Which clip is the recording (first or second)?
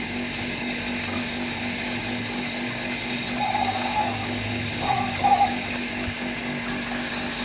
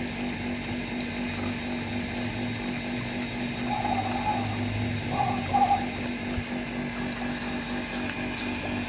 second